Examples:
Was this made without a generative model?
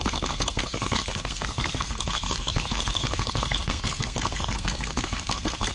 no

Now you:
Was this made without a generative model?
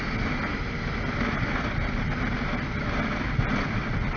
yes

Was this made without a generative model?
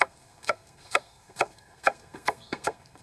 no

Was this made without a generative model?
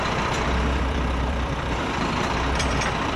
no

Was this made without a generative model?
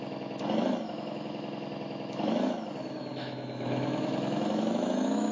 no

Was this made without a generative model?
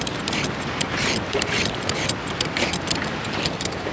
yes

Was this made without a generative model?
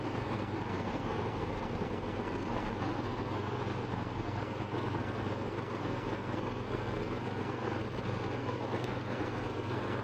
no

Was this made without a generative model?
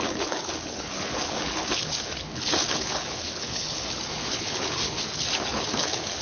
no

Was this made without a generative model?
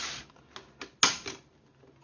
yes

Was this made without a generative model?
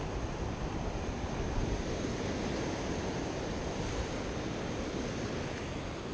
yes